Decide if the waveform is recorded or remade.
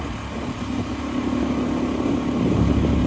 recorded